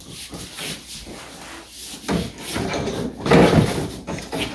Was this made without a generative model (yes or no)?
yes